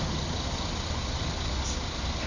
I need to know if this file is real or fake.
real